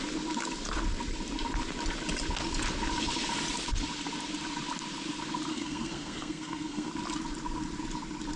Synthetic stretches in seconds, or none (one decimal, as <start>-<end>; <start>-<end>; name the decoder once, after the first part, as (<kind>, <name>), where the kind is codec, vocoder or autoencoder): 5.5-6.9 (codec, SNAC)